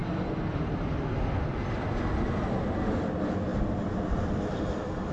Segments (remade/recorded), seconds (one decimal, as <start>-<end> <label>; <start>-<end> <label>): 0.0-2.5 recorded; 2.5-5.1 remade